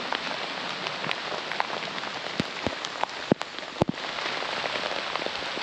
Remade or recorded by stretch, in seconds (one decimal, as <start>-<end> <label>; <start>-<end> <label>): 0.0-5.6 recorded